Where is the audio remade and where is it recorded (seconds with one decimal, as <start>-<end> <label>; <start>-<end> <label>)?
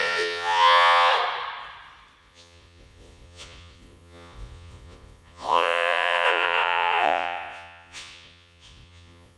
0.0-1.1 remade; 1.1-2.2 recorded; 2.2-9.4 remade